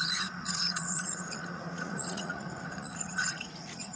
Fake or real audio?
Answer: fake